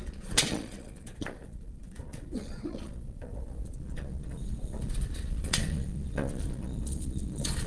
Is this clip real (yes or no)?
no